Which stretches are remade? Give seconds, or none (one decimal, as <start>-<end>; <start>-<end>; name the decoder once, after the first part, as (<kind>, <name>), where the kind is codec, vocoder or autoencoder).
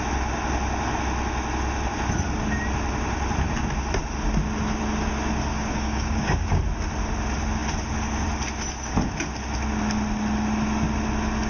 5.5-6.6 (codec, DAC)